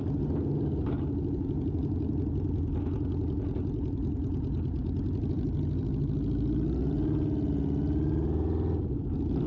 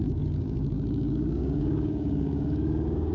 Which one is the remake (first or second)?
second